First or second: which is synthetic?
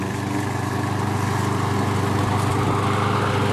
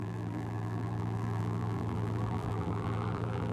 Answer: second